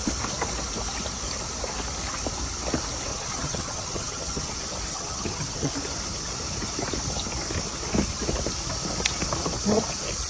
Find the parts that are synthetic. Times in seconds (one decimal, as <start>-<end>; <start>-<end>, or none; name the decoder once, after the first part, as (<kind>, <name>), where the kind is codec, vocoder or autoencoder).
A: 3.1-4.5 (vocoder, HiFi-GAN); 4.9-5.7